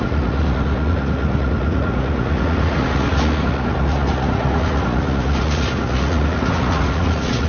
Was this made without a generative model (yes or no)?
no